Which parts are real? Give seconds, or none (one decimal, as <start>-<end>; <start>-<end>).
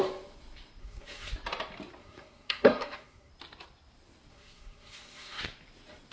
0.0-0.8; 1.3-2.0; 3.3-4.3; 5.4-6.1